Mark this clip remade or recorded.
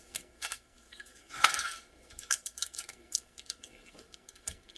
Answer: remade